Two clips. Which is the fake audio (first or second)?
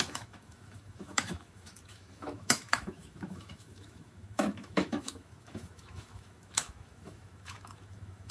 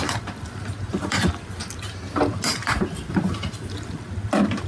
first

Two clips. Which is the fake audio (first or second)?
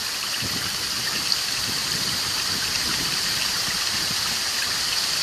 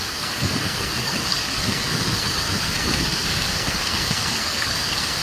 second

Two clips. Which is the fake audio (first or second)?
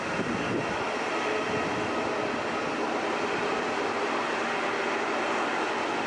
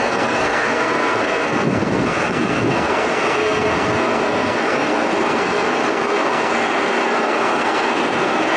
second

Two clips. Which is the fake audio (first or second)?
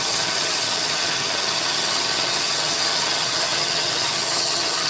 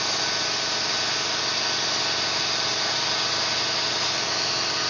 first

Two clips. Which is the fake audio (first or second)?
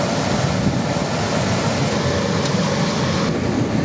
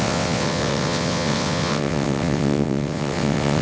second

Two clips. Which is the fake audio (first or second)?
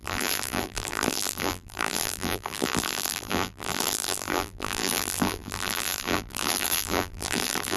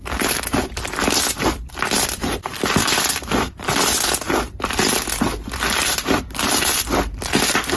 first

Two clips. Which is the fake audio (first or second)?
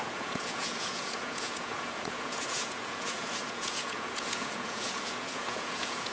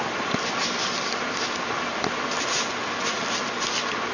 first